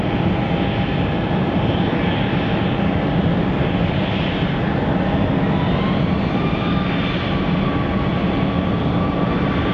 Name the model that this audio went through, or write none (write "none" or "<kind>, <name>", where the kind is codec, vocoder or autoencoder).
none